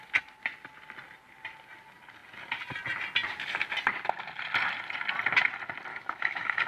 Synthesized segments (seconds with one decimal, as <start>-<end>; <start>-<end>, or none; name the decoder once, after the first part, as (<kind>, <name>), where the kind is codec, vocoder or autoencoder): 5.9-6.7 (autoencoder, DAC-VAE)